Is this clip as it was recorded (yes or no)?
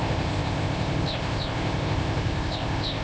no